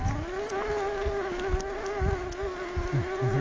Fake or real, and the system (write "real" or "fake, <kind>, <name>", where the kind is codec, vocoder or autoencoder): real